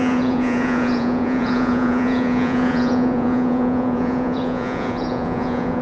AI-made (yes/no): yes